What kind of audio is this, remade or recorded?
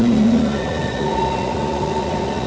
remade